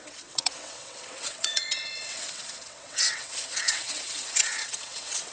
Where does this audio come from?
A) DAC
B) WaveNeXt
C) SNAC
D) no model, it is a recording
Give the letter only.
B